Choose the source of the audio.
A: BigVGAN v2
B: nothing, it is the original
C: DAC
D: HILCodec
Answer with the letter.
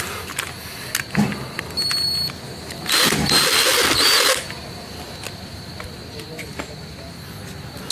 B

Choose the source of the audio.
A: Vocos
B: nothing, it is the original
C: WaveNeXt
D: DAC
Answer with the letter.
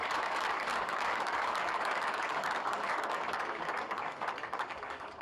D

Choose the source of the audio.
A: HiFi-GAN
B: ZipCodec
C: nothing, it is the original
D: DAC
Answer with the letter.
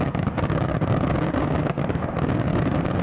D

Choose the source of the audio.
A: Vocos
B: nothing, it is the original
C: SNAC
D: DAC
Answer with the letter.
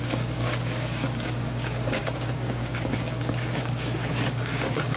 D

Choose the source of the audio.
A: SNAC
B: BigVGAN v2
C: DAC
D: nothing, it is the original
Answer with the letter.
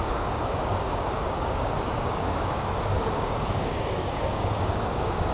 C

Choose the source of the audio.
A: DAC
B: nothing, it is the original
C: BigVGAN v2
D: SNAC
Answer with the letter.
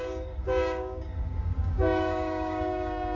A